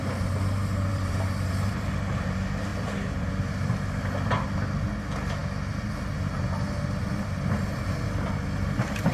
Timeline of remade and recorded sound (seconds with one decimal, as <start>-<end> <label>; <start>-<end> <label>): 0.0-0.9 recorded; 0.9-1.5 remade; 1.5-2.7 recorded; 2.7-3.3 remade; 3.3-9.1 recorded